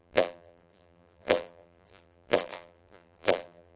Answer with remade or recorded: remade